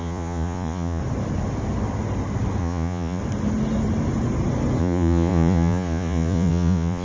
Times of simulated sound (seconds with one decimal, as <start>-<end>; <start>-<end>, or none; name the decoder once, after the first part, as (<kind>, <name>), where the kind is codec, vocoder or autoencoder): 0.0-1.0 (vocoder, Vocos); 2.6-3.2; 4.8-7.0